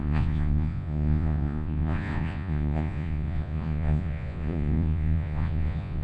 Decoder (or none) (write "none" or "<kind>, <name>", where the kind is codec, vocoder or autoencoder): vocoder, Vocos